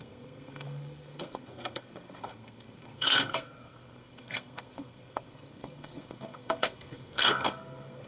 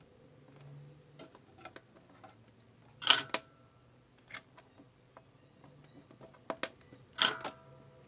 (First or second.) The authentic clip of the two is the second